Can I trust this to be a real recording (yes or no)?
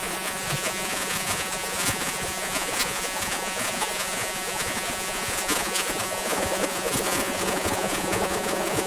no